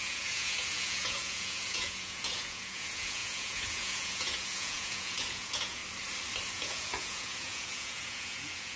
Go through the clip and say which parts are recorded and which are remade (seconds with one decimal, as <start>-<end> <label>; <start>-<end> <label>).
0.0-5.8 remade; 5.8-6.5 recorded; 6.5-8.8 remade